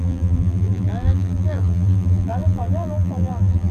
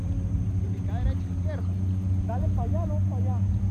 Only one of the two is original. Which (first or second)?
second